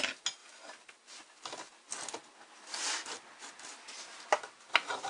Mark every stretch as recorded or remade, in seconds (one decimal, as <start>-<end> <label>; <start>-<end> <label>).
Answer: 0.0-5.1 recorded